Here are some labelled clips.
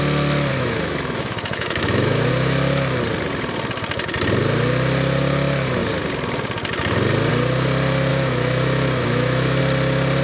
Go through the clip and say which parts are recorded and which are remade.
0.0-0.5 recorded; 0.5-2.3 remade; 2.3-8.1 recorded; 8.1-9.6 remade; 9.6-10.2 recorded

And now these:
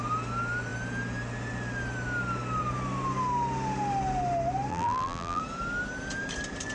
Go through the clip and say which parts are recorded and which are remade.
0.0-4.7 recorded; 4.7-5.4 remade; 5.4-6.7 recorded

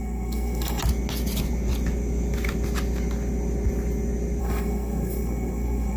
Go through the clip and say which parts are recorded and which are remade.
0.0-0.8 remade; 0.8-4.4 recorded; 4.4-6.0 remade

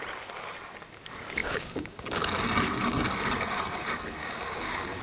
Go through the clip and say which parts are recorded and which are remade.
0.0-1.4 recorded; 1.4-2.3 remade; 2.3-4.2 recorded; 4.2-5.0 remade

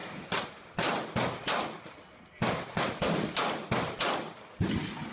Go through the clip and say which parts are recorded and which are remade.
0.0-5.1 recorded

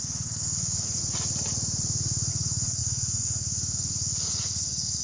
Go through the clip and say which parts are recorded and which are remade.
0.0-1.0 remade; 1.0-2.3 recorded; 2.3-5.0 remade

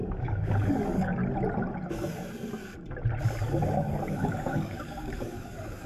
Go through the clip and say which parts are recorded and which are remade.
0.0-1.2 remade; 1.2-4.1 recorded; 4.1-5.9 remade

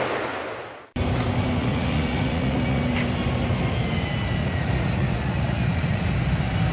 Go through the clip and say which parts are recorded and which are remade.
0.0-1.6 recorded; 1.6-2.8 remade; 2.8-4.4 recorded; 4.4-6.0 remade; 6.0-6.7 recorded